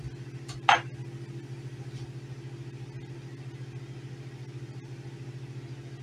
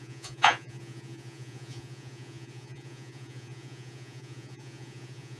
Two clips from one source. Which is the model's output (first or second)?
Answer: second